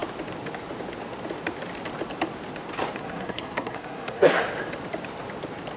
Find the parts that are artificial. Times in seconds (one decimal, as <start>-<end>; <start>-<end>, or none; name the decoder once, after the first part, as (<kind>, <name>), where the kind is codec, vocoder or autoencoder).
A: 3.0-4.4 (codec, SNAC)